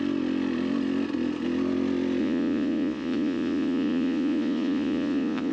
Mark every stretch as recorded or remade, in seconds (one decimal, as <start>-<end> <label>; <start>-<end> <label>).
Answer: 0.0-2.2 recorded; 2.2-5.5 remade